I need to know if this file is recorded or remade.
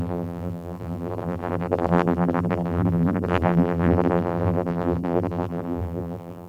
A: remade